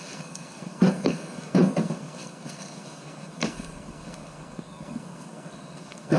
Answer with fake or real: fake